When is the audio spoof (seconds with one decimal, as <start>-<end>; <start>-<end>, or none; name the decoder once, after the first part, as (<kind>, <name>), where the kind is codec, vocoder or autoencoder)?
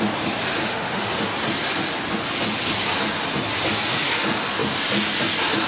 0.6-1.1 (autoencoder, DAC-VAE)